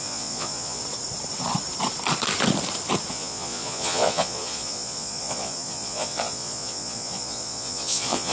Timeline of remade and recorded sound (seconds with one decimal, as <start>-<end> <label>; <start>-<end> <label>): 0.0-0.8 remade; 0.8-3.1 recorded; 3.1-8.3 remade